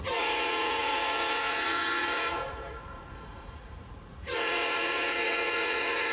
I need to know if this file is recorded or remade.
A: remade